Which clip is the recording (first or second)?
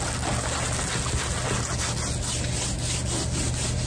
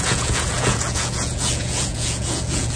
first